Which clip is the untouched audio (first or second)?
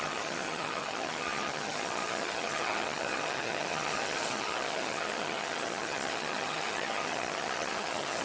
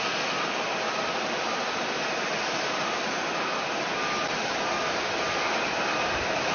second